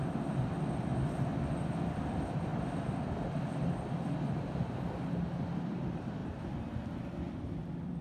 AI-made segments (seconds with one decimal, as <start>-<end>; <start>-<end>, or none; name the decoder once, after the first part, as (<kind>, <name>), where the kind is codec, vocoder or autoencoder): 0.0-0.9 (vocoder, BigVGAN v2); 1.7-2.5; 5.5-6.2; 7.6-8.0

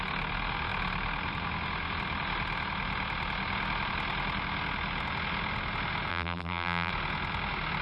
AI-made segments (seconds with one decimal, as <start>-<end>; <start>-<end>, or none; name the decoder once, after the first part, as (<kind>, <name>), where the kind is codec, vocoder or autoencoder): 6.1-6.9 (vocoder, BigVGAN v2)

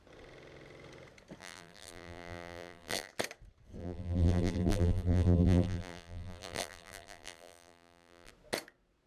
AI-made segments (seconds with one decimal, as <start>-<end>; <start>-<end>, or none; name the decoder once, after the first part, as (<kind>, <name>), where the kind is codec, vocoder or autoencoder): 1.4-3.1 (vocoder, BigVGAN v2); 3.8-8.3